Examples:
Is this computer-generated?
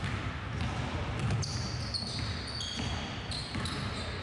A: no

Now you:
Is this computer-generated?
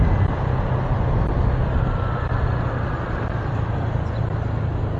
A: no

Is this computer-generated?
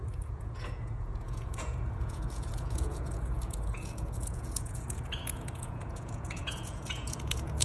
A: yes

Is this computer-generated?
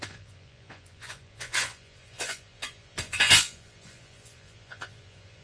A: yes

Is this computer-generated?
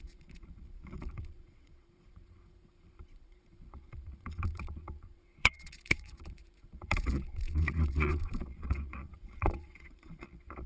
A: yes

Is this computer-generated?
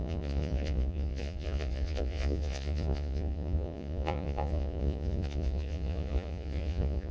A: yes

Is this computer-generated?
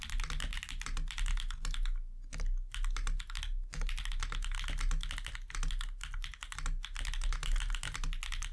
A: no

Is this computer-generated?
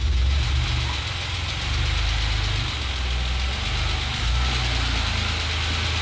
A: no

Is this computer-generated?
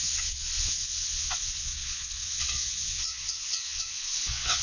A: yes